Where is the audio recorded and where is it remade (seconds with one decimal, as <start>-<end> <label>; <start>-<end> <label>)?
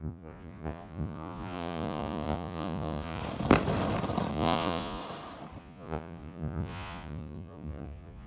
0.0-3.2 remade; 3.2-4.3 recorded; 4.3-5.0 remade; 5.0-5.6 recorded; 5.6-8.3 remade